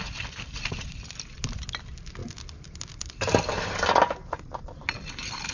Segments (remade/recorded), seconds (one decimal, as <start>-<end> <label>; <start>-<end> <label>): 0.0-5.5 recorded